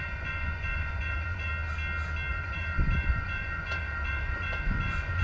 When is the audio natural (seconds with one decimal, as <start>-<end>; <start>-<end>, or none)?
1.5-2.3